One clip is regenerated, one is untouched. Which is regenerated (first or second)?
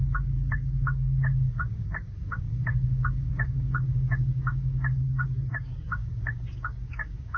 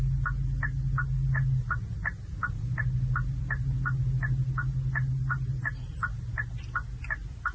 first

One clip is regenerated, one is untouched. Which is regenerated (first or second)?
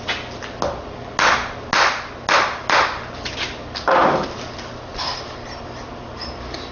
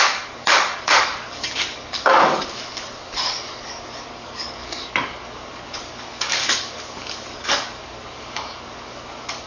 second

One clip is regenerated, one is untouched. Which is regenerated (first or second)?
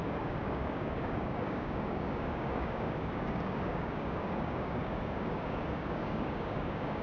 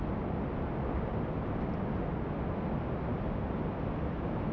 first